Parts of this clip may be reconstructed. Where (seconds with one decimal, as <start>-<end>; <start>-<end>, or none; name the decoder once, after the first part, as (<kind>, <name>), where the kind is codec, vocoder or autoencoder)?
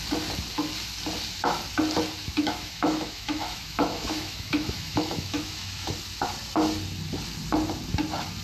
2.2-5.9 (autoencoder, DAC-VAE)